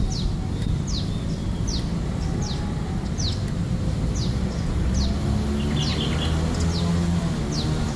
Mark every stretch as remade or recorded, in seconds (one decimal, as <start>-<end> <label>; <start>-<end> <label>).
0.0-8.0 recorded